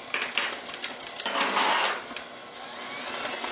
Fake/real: real